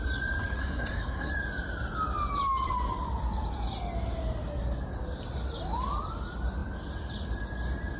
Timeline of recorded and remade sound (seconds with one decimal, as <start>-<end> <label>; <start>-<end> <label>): 0.0-0.6 recorded; 0.6-1.3 remade; 1.3-8.0 recorded